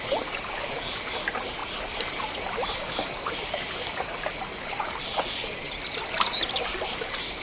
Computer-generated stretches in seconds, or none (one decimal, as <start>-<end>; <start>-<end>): 1.6-5.0